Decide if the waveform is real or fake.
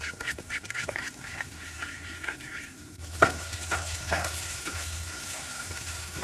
fake